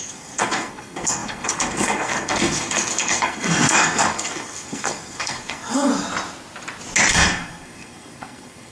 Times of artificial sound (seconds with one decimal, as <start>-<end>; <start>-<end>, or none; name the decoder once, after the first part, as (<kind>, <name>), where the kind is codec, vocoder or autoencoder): 0.0-5.9 (codec, SNAC); 7.1-8.7